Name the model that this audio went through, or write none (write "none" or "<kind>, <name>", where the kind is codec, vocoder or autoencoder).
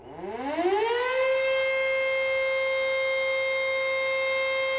none